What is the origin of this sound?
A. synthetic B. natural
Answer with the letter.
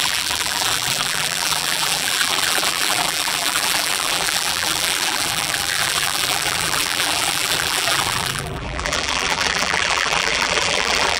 A